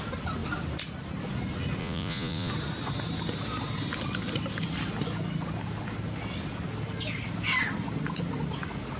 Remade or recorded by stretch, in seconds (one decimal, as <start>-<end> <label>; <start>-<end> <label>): 0.0-1.8 recorded; 1.8-2.5 remade; 2.5-9.0 recorded